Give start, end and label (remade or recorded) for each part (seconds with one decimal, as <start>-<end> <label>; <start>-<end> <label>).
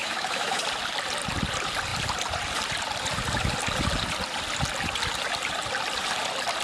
0.0-0.6 remade; 0.6-6.6 recorded